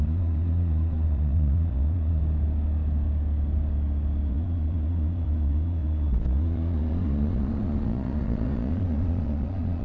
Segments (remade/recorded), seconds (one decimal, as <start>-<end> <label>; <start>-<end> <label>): 0.0-2.2 remade; 2.2-4.3 recorded; 4.3-9.8 remade

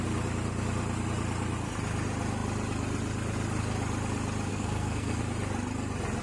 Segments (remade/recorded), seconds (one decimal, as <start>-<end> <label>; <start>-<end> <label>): 0.0-4.5 recorded; 4.5-5.2 remade; 5.2-6.2 recorded

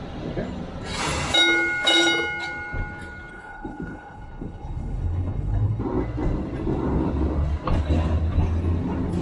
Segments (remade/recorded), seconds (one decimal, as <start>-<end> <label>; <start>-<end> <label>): 0.0-3.3 recorded; 3.3-5.8 remade; 5.8-9.2 recorded